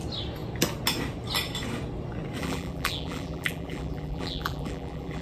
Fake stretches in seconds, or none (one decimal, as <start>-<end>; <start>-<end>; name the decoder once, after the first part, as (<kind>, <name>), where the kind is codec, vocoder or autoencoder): 2.4-5.2 (vocoder, BigVGAN v2)